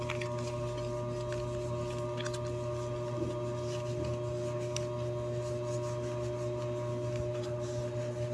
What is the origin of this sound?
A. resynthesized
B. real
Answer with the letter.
B